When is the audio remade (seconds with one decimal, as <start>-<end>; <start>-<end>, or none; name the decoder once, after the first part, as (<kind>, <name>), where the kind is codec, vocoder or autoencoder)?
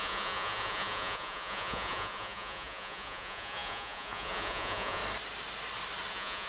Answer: 0.0-5.0 (vocoder, Vocos); 6.1-6.5